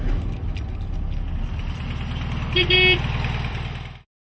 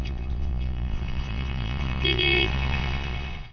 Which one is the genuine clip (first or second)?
first